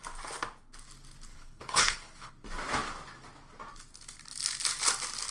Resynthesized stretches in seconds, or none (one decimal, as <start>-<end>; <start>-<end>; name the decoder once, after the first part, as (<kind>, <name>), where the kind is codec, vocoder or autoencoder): 1.3-2.3 (codec, HILCodec)